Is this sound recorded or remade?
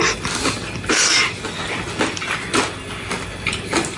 recorded